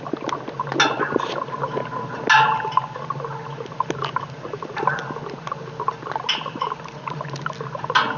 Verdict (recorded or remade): recorded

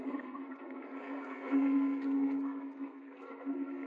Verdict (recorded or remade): remade